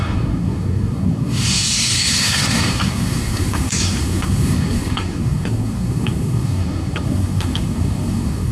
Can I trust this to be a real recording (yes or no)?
no